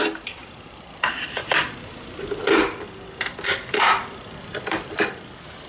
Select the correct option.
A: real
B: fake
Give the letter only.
B